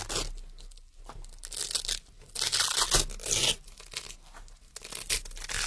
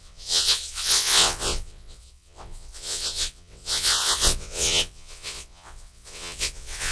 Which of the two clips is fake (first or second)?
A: second